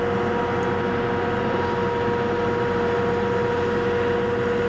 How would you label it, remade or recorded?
recorded